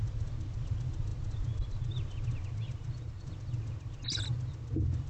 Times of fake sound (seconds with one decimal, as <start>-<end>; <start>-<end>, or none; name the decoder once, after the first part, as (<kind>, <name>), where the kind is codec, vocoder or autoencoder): none